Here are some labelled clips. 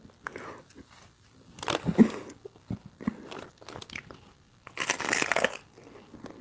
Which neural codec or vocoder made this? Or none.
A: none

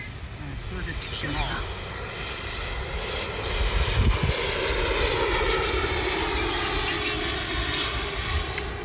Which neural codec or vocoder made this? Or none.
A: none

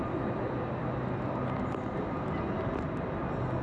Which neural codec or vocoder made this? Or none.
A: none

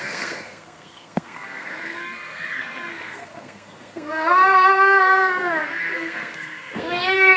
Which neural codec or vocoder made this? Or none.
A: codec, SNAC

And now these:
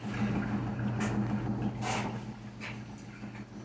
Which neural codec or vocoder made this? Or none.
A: none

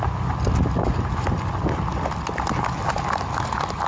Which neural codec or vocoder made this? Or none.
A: none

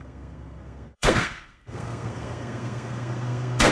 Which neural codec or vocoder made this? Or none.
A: codec, SNAC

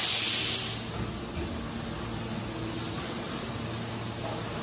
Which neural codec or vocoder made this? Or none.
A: none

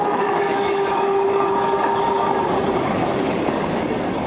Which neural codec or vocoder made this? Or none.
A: codec, DAC